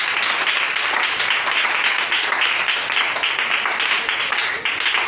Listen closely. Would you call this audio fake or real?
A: real